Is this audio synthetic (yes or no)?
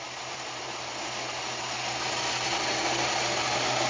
no